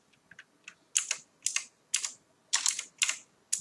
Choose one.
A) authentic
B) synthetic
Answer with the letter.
A